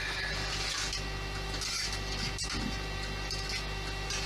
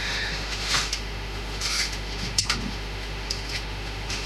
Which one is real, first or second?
first